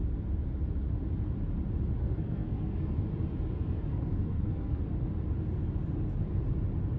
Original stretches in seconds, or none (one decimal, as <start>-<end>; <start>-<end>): 0.0-2.0; 3.0-3.9; 4.8-7.0